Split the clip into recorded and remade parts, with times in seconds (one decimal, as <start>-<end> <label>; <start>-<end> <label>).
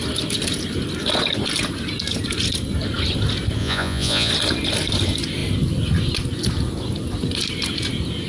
0.0-3.6 recorded; 3.6-4.3 remade; 4.3-8.3 recorded